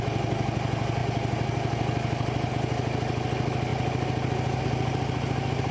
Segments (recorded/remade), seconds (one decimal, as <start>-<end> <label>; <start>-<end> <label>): 0.0-5.7 recorded